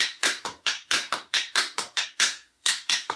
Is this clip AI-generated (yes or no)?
yes